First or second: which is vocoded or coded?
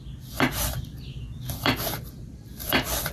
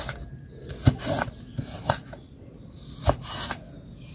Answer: first